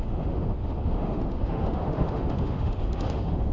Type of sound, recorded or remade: remade